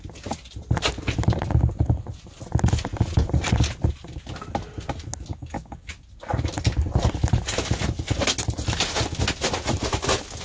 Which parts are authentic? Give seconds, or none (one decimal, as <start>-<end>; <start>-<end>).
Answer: 0.0-5.3; 5.9-10.4

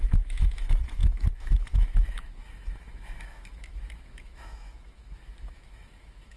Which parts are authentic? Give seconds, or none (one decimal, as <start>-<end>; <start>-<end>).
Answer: none

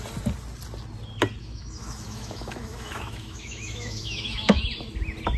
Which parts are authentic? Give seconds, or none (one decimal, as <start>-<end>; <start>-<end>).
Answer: 0.0-1.4; 4.6-5.4

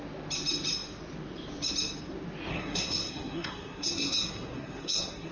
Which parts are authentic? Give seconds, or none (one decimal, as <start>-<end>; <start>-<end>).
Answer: 0.0-2.5

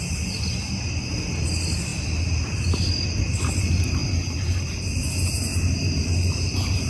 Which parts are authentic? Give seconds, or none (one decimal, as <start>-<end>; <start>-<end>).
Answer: 0.0-5.5

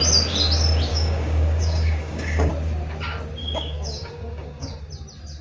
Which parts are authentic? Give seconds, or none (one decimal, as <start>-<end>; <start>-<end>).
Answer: 0.0-0.9; 2.5-3.4; 4.9-5.4

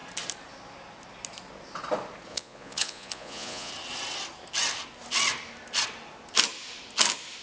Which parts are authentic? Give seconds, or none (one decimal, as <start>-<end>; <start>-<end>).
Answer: 0.0-2.3; 3.7-7.4

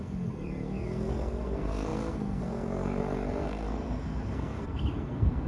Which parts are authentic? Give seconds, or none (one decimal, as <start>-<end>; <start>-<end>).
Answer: none